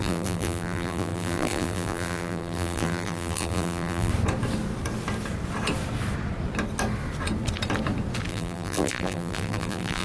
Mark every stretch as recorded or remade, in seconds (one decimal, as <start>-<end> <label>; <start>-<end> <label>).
0.0-4.1 remade; 4.1-8.3 recorded; 8.3-10.0 remade